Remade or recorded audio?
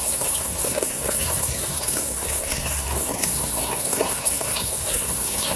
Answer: remade